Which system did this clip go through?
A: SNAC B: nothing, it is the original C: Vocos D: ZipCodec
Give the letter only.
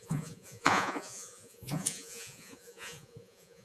C